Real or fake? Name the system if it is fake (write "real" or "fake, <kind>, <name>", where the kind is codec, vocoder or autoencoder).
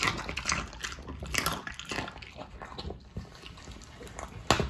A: real